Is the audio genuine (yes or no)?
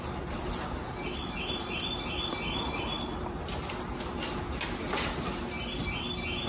yes